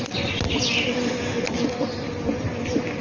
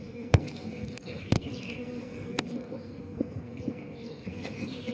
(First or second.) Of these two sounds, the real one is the first